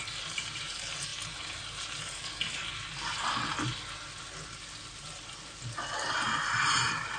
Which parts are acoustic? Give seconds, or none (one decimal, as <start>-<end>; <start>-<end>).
0.0-7.2